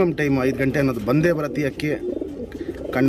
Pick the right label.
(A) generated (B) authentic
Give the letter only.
B